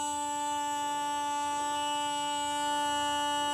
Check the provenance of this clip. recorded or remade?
recorded